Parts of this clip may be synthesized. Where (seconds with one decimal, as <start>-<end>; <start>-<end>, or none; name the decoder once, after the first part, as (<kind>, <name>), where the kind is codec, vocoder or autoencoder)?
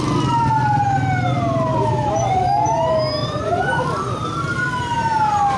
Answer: 3.2-3.7 (vocoder, Vocos)